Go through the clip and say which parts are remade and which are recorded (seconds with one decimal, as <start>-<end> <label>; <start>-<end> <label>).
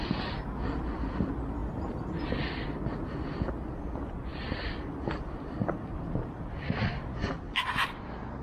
0.0-1.6 recorded; 1.6-2.5 remade; 2.5-4.3 recorded; 4.3-7.3 remade; 7.3-8.4 recorded